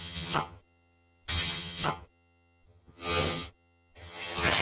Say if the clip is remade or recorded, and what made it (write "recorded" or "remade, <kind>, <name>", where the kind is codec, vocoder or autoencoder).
remade, vocoder, HiFi-GAN